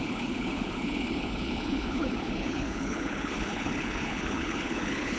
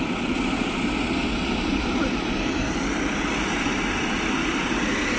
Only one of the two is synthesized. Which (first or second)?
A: first